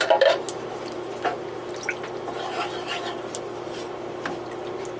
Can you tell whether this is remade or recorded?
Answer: recorded